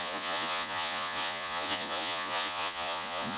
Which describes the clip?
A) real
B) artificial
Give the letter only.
B